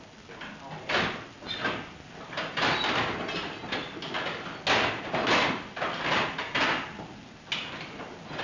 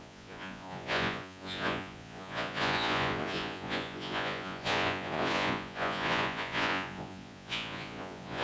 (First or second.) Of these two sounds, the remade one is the second